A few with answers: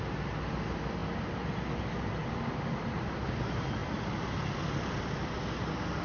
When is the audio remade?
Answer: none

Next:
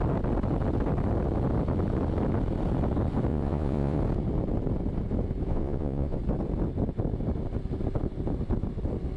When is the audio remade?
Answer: 3.3-4.0 (vocoder, Vocos); 5.5-6.2

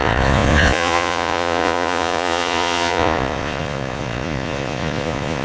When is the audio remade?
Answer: 0.0-5.4 (vocoder, Vocos)

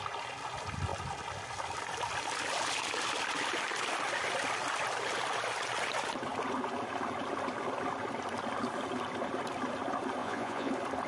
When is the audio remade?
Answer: 10.2-10.7 (vocoder, Vocos)

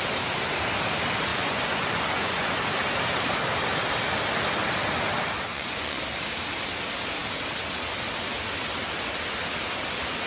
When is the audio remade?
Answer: 1.3-2.6 (vocoder, Vocos); 5.5-6.0

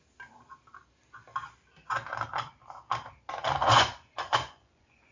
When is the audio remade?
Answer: 3.6-5.1 (vocoder, Vocos)

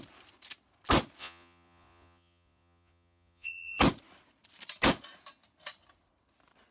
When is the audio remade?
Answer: 1.2-3.8 (vocoder, Vocos)

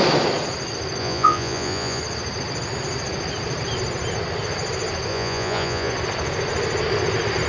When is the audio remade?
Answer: 1.0-2.0 (vocoder, Vocos); 5.1-5.9